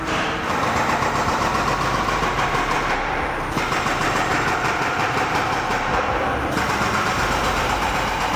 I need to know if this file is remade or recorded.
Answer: remade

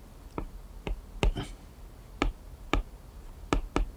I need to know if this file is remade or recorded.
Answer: recorded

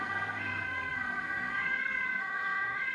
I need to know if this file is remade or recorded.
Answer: remade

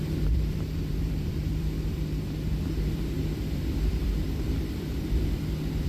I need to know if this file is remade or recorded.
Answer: remade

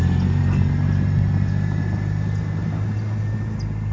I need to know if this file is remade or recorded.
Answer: recorded